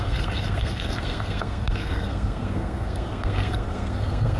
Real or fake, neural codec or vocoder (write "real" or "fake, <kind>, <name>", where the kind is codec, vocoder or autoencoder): fake, codec, SNAC